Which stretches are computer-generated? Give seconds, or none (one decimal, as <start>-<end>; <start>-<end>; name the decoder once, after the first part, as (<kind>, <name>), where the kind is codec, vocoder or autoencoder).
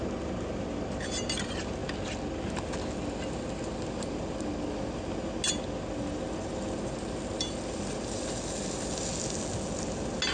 none